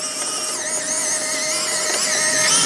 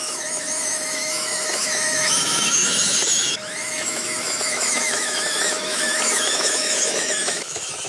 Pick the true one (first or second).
first